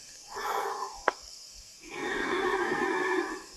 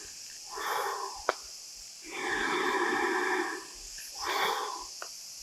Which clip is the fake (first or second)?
first